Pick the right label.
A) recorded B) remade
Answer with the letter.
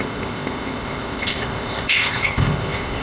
B